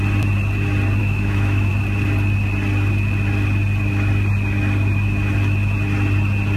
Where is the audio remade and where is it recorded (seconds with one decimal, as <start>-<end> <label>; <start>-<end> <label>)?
0.0-1.0 recorded; 1.0-1.7 remade; 1.7-6.6 recorded